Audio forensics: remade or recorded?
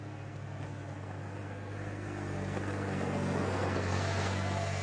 remade